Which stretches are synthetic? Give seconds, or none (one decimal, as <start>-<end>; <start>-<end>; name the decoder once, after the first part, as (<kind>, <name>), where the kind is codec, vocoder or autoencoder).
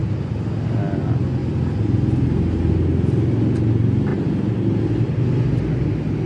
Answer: none